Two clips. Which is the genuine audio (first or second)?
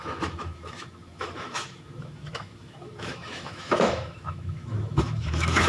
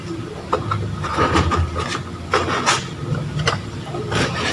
second